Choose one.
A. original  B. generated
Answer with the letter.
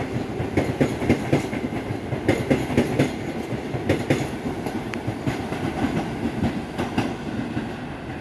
A